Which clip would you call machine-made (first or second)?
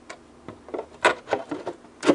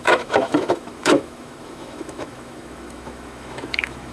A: second